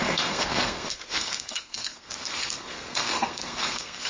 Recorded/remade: remade